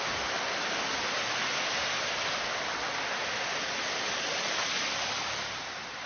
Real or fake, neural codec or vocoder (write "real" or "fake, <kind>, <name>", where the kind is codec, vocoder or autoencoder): real